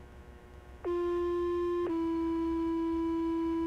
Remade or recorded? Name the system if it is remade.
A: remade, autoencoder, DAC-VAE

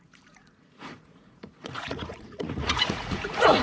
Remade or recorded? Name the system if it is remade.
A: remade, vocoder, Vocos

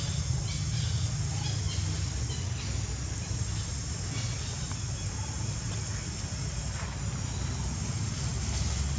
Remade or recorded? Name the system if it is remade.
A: recorded